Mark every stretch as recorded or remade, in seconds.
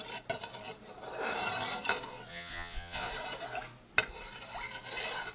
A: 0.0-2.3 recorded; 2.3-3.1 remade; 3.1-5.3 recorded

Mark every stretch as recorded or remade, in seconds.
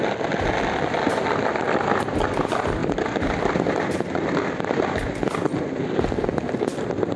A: 0.0-7.2 recorded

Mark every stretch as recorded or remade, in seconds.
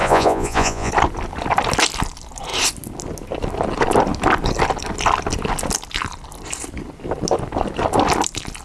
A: 0.0-0.9 remade; 0.9-8.6 recorded